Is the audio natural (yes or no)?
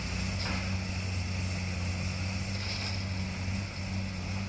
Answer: yes